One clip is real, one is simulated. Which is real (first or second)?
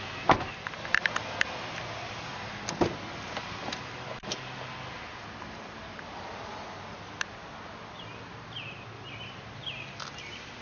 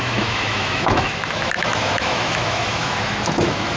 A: first